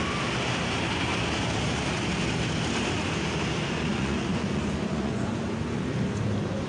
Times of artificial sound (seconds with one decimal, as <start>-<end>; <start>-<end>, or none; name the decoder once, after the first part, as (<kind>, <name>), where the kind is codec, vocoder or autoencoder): 3.9-5.3 (vocoder, Vocos)